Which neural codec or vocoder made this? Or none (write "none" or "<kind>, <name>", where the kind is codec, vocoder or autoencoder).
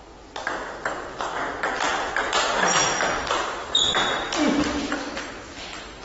none